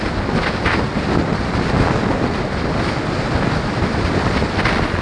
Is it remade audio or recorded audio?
recorded